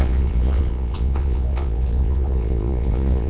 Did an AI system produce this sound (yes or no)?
yes